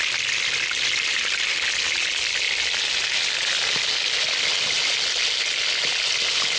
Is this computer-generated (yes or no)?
no